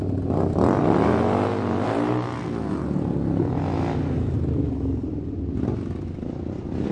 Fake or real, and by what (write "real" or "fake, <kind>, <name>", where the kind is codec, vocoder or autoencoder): real